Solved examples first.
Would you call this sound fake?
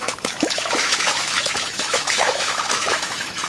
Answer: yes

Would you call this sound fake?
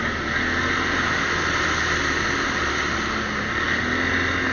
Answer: no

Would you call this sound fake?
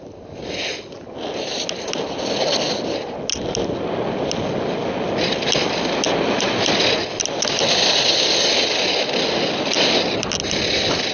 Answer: no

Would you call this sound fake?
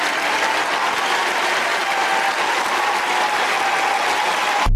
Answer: no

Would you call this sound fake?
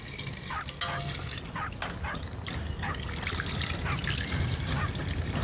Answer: no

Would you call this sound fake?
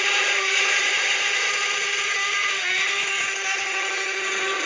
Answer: no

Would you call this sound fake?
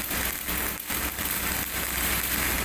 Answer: no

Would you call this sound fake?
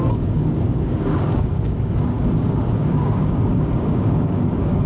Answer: yes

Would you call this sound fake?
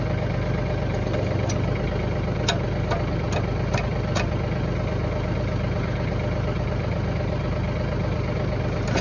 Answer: no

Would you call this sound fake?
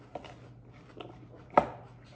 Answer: no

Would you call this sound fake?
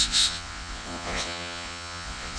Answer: yes